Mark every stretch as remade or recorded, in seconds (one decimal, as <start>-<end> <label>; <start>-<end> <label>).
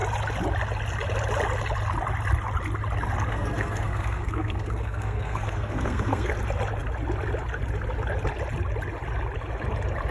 0.0-3.3 recorded; 3.3-6.3 remade; 6.3-10.1 recorded